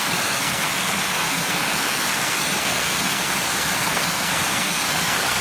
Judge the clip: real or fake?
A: fake